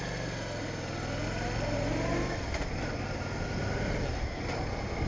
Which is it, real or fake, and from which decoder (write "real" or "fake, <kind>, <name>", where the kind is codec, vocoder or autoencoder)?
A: real